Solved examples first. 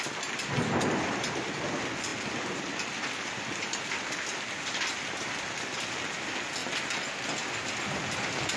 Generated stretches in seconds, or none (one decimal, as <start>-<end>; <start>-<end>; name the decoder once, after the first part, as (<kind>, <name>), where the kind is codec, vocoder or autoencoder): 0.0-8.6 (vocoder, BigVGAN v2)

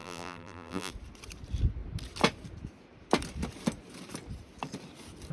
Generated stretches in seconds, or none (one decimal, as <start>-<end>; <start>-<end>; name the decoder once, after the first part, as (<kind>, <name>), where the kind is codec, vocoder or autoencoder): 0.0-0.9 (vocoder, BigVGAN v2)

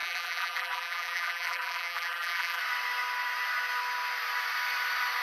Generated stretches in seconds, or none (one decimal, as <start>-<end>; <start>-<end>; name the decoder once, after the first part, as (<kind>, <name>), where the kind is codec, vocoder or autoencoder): 0.0-2.6 (vocoder, BigVGAN v2)

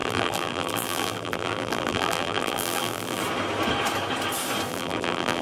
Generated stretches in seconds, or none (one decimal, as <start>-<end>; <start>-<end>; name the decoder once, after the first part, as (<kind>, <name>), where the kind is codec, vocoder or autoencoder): 0.0-3.2 (vocoder, BigVGAN v2); 4.7-5.4

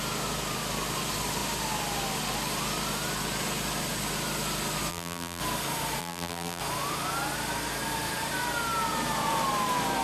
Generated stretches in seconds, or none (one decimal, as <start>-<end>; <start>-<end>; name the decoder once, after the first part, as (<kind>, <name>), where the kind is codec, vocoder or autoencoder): 4.9-5.4 (vocoder, BigVGAN v2); 6.0-6.6

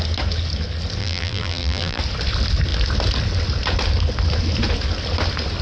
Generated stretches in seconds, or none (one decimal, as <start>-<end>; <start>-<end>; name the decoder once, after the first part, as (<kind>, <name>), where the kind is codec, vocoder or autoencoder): 1.0-2.0 (vocoder, BigVGAN v2)

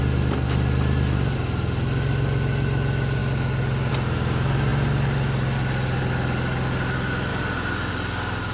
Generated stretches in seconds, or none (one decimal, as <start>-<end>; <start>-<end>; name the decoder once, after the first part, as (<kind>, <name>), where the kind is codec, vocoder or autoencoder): none